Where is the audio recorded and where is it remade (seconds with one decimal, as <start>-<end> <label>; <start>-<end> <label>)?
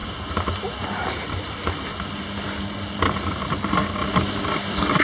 0.0-5.0 recorded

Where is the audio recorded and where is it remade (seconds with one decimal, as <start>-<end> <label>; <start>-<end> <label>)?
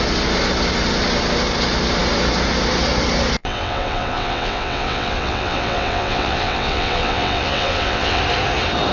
0.0-3.4 recorded; 3.4-8.2 remade; 8.2-8.9 recorded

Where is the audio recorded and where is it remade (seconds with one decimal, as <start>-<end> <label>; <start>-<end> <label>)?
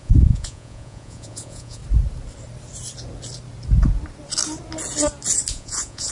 0.0-1.8 remade; 1.8-5.5 recorded; 5.5-6.1 remade